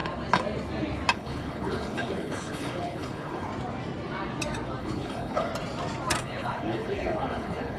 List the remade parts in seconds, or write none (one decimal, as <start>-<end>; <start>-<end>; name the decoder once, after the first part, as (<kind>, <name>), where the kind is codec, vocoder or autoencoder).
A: 1.1-3.5 (codec, HILCodec); 4.8-5.5; 6.2-7.8